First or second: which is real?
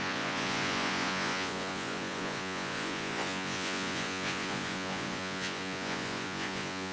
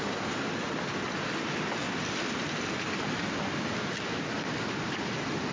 second